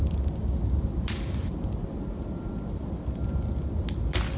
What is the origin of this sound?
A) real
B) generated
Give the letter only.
A